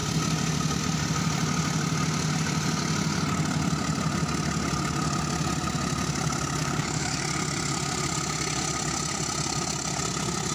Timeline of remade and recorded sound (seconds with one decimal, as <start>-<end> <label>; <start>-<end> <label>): 0.0-6.6 recorded; 6.6-7.2 remade; 7.2-10.5 recorded